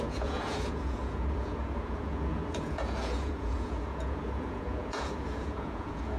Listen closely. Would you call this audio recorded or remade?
remade